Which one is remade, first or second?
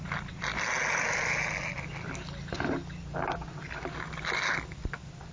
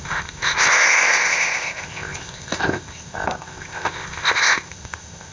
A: second